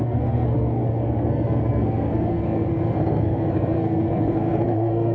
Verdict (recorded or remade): remade